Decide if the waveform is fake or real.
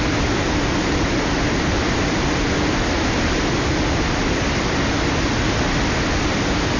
real